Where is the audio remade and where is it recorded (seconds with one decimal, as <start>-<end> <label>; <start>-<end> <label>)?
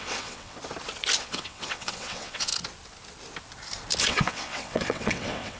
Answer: 0.0-0.6 remade; 0.6-1.2 recorded; 1.2-2.5 remade; 2.5-4.0 recorded; 4.0-5.6 remade